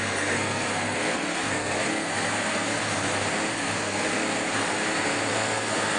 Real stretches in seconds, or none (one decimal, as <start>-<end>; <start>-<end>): 2.8-3.5; 4.2-5.3

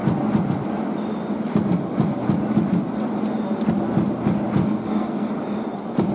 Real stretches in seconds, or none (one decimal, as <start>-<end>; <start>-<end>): 0.0-4.6; 5.3-6.1